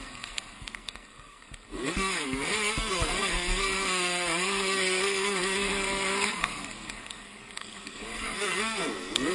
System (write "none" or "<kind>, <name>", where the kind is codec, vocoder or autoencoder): codec, SNAC